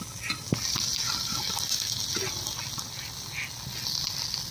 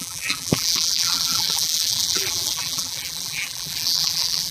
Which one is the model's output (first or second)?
second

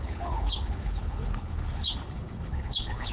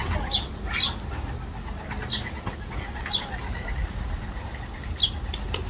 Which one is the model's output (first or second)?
first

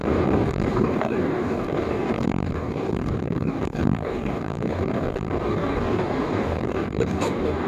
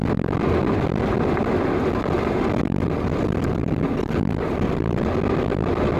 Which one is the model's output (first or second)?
first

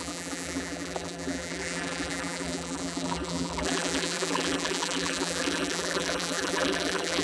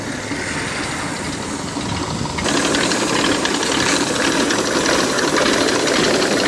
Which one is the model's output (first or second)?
first